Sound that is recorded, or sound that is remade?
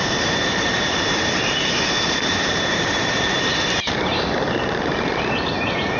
remade